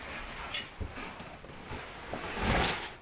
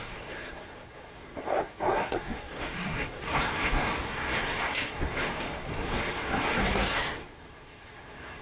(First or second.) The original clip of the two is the first